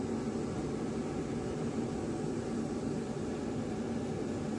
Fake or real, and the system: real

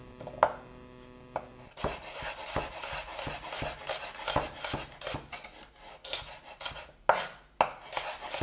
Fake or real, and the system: real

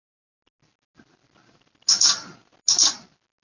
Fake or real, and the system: real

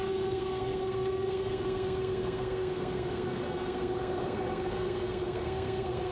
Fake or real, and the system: fake, codec, SNAC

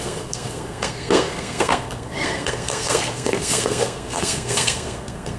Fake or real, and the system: fake, codec, SNAC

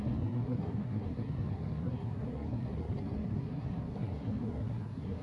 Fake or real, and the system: fake, codec, SNAC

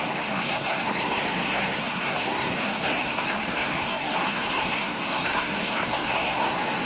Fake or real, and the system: fake, codec, SNAC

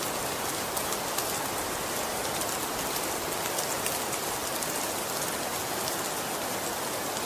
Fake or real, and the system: real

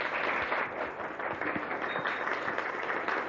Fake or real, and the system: real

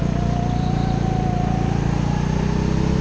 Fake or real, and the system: real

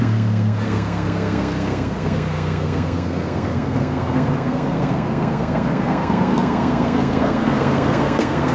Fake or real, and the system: fake, codec, SNAC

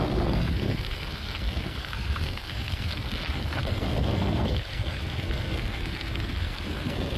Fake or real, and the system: fake, codec, SNAC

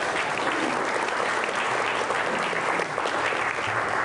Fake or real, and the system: real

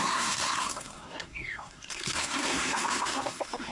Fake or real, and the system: fake, codec, SNAC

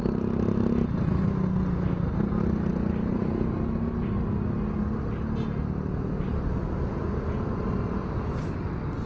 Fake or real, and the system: real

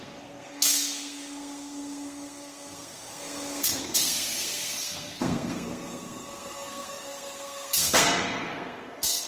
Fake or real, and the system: fake, codec, SNAC